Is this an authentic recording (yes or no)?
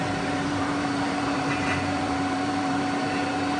no